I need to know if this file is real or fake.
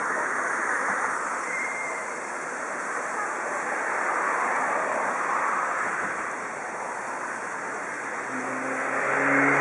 real